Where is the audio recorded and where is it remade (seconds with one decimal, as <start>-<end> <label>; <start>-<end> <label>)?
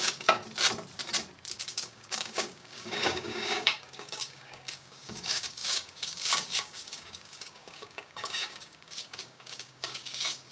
0.0-0.4 remade; 0.4-1.5 recorded; 1.5-10.5 remade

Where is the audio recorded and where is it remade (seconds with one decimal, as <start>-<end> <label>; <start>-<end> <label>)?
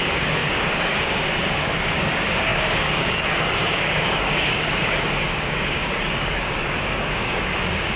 0.0-8.0 remade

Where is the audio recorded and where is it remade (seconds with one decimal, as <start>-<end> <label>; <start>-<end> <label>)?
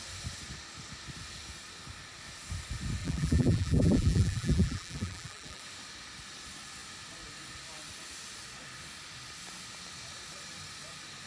0.0-3.0 recorded; 3.0-5.6 remade; 5.6-11.3 recorded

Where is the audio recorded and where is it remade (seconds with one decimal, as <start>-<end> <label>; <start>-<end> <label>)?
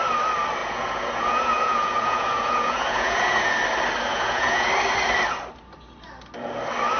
0.0-0.6 recorded; 0.6-3.5 remade; 3.5-4.1 recorded; 4.1-4.7 remade; 4.7-7.0 recorded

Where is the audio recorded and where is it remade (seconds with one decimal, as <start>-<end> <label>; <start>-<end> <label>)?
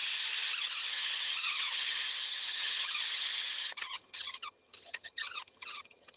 0.0-0.6 recorded; 0.6-6.2 remade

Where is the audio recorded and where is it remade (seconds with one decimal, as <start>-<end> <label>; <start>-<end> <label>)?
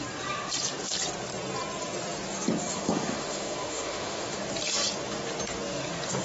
0.0-2.7 recorded; 2.7-4.4 remade; 4.4-6.2 recorded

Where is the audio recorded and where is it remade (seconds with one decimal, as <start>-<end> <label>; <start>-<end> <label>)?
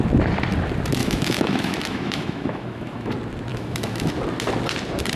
0.0-1.0 recorded; 1.0-3.1 remade; 3.1-3.5 recorded; 3.5-4.1 remade; 4.1-5.2 recorded